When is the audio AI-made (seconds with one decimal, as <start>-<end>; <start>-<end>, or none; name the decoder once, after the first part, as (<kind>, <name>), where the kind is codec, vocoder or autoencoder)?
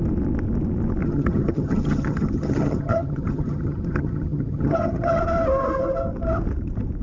1.0-5.2 (vocoder, HiFi-GAN)